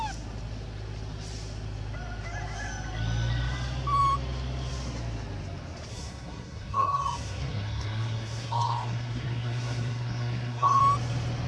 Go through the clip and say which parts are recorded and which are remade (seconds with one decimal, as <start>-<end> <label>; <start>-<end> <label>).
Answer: 0.0-5.9 recorded; 5.9-10.8 remade; 10.8-11.5 recorded